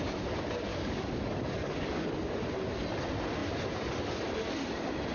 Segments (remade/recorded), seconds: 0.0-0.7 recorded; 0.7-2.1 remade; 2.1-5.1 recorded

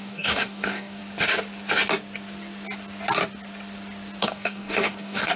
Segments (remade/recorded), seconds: 0.0-1.0 remade; 1.0-4.2 recorded; 4.2-5.4 remade

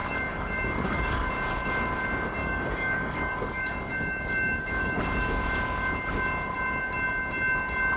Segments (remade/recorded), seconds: 0.0-1.3 remade; 1.3-2.4 recorded; 2.4-5.0 remade; 5.0-8.0 recorded

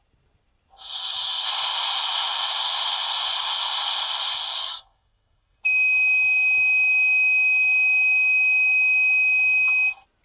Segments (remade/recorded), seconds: 0.0-4.6 recorded; 4.6-5.6 remade; 5.6-10.2 recorded

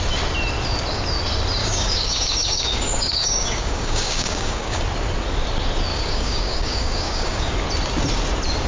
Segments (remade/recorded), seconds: 0.0-1.6 recorded; 1.6-4.8 remade; 4.8-5.9 recorded; 5.9-7.5 remade; 7.5-8.7 recorded

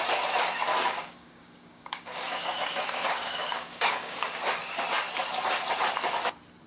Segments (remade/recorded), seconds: 0.0-0.7 recorded; 0.7-4.3 remade; 4.3-6.7 recorded

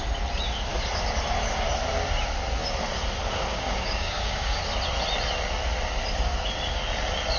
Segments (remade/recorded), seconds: 0.0-3.5 recorded; 3.5-4.6 remade; 4.6-7.4 recorded

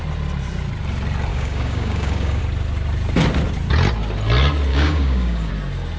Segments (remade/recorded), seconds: 0.0-1.3 recorded; 1.3-2.4 remade; 2.4-4.7 recorded; 4.7-5.5 remade; 5.5-6.0 recorded